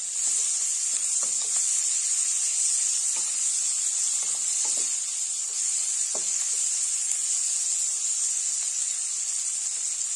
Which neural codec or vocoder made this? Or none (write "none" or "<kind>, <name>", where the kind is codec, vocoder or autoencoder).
none